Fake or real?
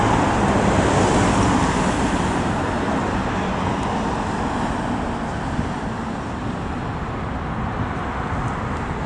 real